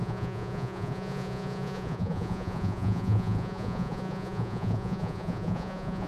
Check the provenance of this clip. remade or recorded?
remade